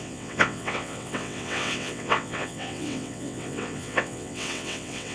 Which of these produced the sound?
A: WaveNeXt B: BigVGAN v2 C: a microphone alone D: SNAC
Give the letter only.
A